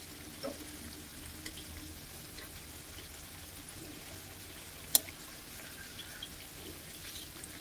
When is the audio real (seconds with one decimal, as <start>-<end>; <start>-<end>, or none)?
0.0-7.6